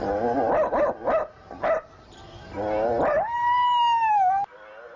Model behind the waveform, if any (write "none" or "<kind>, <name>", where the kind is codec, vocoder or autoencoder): none